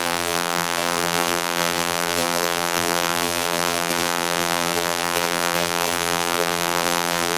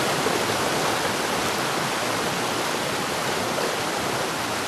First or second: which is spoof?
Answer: first